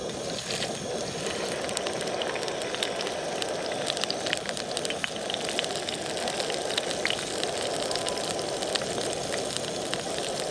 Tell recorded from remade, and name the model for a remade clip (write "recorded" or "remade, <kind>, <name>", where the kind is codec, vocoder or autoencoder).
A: recorded